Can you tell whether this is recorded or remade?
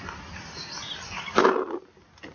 recorded